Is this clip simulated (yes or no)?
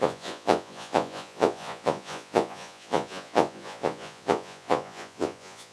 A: yes